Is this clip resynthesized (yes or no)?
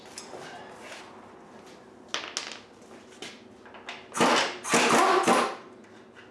no